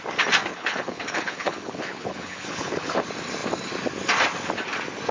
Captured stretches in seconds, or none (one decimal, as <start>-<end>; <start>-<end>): 0.0-0.5; 2.9-5.1